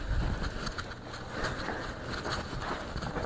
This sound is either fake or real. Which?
real